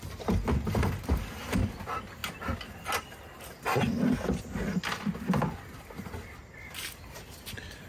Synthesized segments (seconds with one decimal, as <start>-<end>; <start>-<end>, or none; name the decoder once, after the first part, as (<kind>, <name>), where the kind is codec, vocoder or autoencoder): none